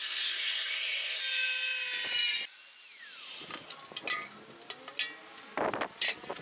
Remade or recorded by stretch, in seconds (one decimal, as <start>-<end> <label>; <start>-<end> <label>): 0.0-1.2 remade; 1.2-6.4 recorded